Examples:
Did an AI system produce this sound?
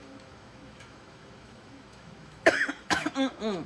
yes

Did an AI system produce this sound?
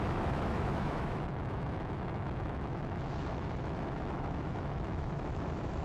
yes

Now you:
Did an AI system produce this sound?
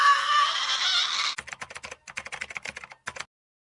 no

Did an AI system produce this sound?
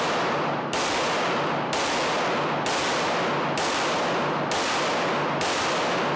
no